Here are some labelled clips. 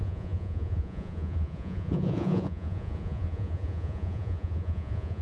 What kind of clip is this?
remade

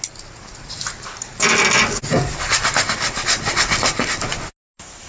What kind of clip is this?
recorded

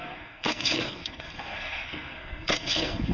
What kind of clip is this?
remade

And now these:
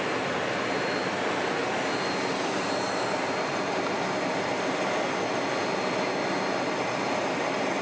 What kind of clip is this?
recorded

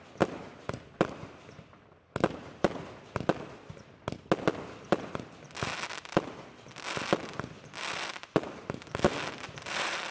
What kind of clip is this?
recorded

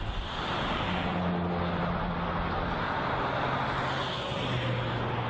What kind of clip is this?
recorded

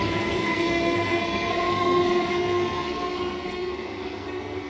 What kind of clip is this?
remade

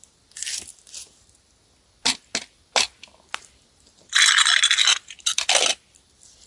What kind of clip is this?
recorded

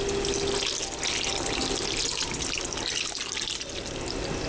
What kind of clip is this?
recorded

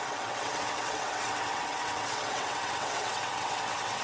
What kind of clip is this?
remade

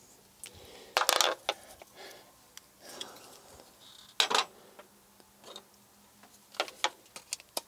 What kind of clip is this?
recorded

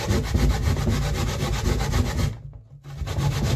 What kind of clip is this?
recorded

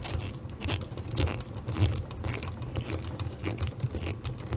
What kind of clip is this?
recorded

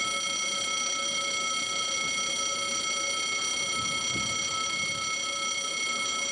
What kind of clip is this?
recorded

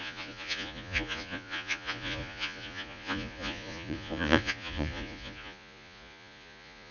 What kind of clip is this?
remade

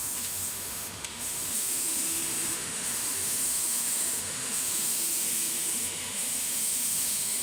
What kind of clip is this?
remade